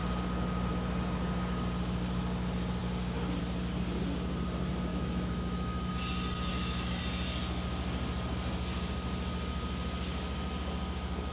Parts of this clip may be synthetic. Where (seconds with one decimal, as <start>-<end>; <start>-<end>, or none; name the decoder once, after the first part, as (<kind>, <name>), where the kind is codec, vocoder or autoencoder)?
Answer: 4.9-5.9 (autoencoder, DAC-VAE); 6.5-7.0